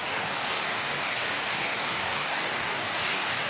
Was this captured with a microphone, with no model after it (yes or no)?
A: no